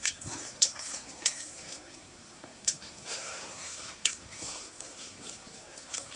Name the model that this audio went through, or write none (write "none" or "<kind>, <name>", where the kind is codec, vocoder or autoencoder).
codec, SNAC